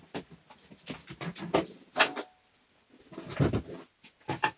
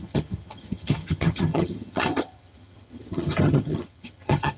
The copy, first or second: second